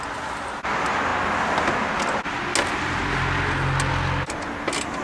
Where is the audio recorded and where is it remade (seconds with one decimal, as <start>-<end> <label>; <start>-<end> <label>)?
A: 0.0-5.0 recorded